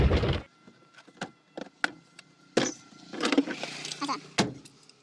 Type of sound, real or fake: real